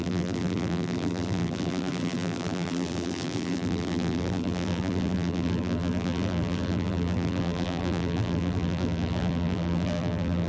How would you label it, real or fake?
fake